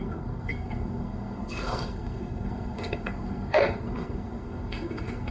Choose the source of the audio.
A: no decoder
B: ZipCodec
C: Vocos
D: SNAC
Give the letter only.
D